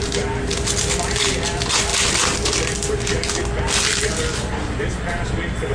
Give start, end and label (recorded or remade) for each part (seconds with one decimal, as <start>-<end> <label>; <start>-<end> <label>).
0.0-5.7 recorded